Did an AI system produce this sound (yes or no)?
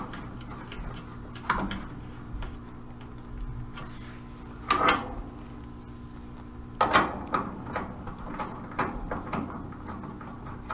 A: no